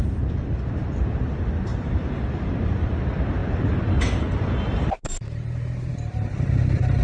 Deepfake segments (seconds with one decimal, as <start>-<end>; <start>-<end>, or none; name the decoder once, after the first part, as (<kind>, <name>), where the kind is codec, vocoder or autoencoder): 1.7-2.7 (vocoder, BigVGAN v2); 3.4-5.0